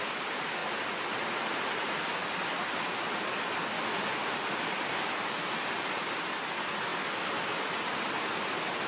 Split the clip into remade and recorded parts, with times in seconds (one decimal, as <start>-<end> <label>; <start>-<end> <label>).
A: 0.0-8.9 recorded